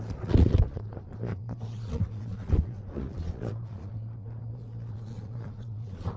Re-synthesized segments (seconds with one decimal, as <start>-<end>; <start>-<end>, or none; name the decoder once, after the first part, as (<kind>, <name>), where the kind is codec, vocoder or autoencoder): 0.0-6.2 (vocoder, Vocos)